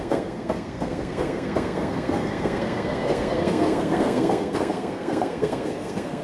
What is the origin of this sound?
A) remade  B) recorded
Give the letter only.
A